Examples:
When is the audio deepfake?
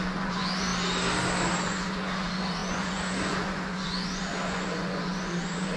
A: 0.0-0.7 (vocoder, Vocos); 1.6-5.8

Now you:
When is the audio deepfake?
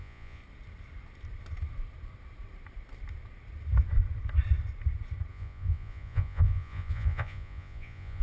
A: 0.0-0.4 (vocoder, Vocos); 5.3-8.2